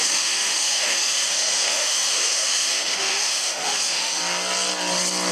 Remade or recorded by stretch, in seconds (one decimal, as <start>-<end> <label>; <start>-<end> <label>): 0.0-4.2 remade; 4.2-5.3 recorded